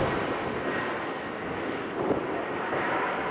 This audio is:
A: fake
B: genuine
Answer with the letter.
B